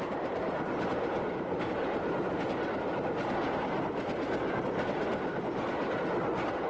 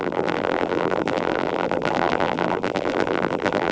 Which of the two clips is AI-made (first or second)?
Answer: second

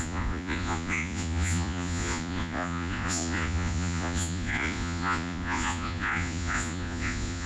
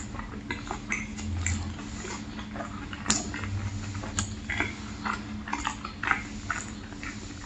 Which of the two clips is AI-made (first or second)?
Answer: first